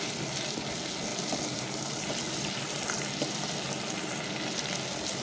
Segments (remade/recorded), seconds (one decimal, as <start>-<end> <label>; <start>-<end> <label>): 0.0-1.1 recorded; 1.1-3.8 remade; 3.8-5.2 recorded